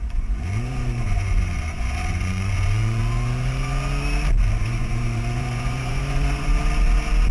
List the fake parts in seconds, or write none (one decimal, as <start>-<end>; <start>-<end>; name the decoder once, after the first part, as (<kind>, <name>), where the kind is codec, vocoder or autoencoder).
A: 0.0-3.0 (vocoder, Vocos); 4.6-6.5